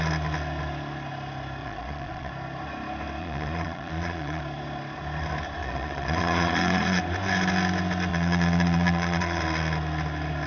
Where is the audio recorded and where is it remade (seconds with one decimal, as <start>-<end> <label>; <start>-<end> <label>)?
0.0-1.6 recorded; 1.6-2.3 remade; 2.3-3.2 recorded; 3.2-4.4 remade; 4.4-5.6 recorded; 5.6-7.0 remade; 7.0-8.1 recorded; 8.1-9.4 remade; 9.4-10.5 recorded